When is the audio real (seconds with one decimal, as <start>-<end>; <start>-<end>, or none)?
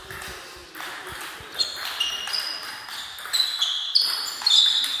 0.0-5.0